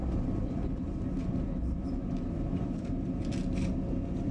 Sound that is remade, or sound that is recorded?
remade